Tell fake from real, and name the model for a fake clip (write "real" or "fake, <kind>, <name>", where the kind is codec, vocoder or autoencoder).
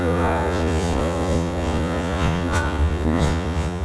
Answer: fake, vocoder, Vocos